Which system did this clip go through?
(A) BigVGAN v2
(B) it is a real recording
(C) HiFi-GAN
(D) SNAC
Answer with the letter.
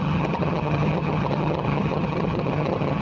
C